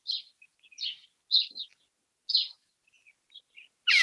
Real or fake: real